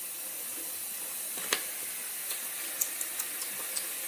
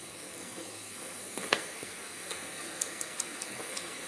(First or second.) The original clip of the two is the first